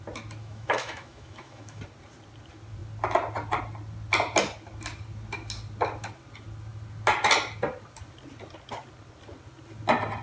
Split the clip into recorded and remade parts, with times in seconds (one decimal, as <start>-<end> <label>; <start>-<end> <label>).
0.0-0.4 recorded; 0.4-1.8 remade; 1.8-10.2 recorded